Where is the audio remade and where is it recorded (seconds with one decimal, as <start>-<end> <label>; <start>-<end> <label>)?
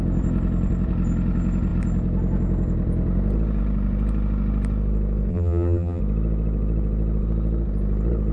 0.0-5.3 recorded; 5.3-6.0 remade; 6.0-8.3 recorded